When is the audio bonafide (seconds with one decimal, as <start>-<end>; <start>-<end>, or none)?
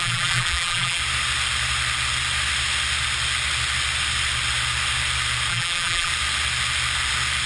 1.0-5.5; 6.1-7.5